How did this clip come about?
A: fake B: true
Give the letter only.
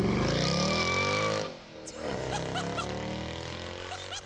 B